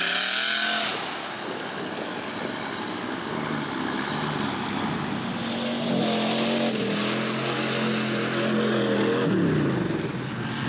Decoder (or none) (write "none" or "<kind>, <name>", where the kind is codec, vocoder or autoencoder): none